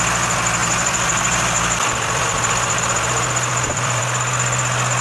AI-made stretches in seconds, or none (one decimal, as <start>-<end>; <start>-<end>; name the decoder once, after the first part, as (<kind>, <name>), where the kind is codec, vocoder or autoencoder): 0.6-2.8 (vocoder, BigVGAN v2); 3.5-4.0